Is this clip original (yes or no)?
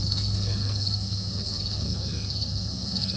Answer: no